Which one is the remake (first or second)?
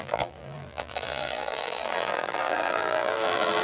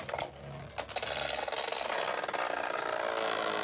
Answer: first